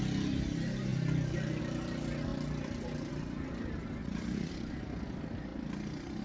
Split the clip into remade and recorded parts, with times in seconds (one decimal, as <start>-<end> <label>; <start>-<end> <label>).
0.0-4.0 recorded; 4.0-4.5 remade; 4.5-6.2 recorded